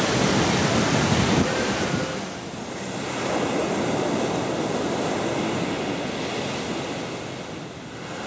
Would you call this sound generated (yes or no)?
no